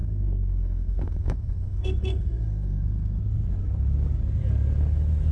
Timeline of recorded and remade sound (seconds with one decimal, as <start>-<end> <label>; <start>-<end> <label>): 0.0-3.2 remade; 3.2-5.3 recorded